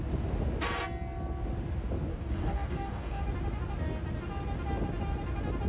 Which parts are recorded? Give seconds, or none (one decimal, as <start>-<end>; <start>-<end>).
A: 0.0-2.1; 3.2-5.7